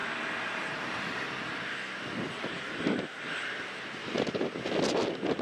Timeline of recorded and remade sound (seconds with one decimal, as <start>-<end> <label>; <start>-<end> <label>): 0.0-5.4 recorded